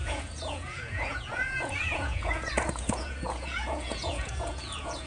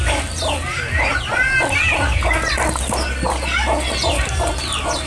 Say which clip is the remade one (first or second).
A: first